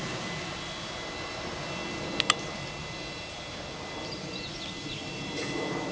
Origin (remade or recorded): recorded